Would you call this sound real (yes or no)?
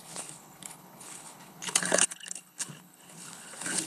no